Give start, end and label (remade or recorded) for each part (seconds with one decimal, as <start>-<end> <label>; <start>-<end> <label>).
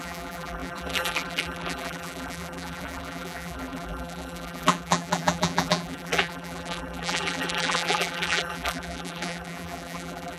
0.0-10.4 remade